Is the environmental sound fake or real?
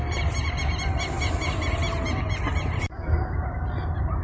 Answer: real